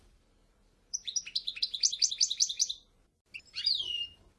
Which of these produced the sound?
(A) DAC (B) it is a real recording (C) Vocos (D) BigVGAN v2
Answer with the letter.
D